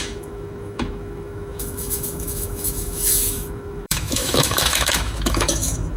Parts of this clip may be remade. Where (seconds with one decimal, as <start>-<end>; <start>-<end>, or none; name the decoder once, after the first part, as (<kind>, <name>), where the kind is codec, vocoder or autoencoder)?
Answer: 0.0-6.0 (autoencoder, DAC-VAE)